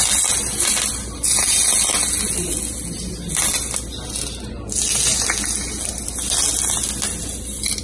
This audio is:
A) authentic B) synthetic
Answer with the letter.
A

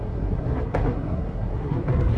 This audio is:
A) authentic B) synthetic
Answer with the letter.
B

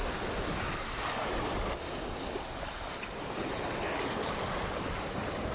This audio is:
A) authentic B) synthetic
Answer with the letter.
A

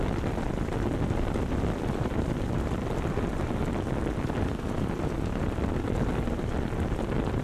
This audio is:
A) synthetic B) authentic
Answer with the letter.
A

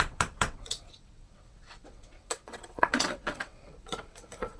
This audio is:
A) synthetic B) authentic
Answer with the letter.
A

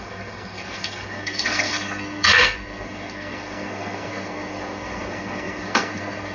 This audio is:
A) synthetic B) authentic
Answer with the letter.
A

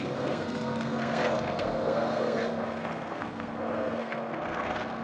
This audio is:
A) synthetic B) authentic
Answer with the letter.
A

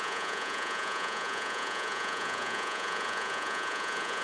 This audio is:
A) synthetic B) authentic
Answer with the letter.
A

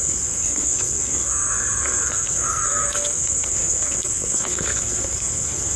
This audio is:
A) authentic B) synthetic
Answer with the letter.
B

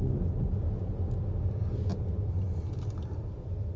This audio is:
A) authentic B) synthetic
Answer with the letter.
A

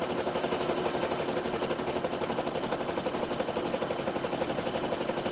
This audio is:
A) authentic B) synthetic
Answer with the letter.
A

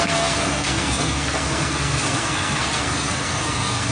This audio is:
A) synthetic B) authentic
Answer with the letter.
A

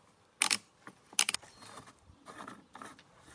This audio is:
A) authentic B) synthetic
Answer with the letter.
A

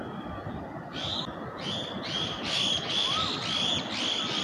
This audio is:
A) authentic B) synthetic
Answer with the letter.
A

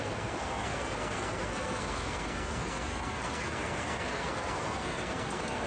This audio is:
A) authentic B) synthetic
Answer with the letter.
B